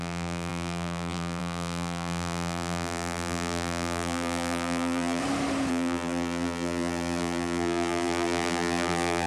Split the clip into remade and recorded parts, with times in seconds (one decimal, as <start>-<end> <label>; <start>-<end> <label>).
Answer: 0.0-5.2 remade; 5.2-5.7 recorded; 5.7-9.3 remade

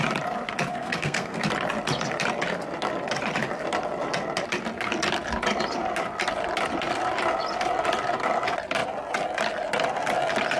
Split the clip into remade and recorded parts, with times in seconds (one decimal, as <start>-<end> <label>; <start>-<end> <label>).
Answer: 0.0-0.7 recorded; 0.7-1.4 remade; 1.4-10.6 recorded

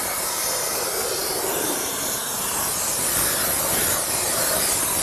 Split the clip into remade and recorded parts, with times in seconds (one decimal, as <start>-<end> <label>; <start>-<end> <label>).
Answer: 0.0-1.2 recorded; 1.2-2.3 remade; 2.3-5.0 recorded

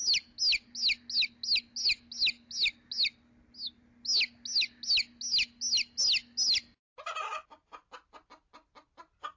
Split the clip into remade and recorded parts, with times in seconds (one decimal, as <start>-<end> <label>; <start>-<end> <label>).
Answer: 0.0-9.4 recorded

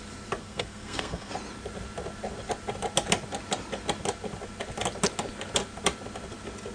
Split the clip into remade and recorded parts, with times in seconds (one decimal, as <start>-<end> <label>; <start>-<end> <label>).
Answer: 0.0-0.4 recorded; 0.4-1.3 remade; 1.3-6.7 recorded